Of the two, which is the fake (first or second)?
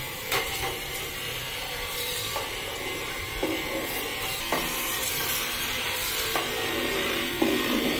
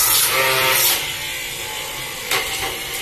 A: first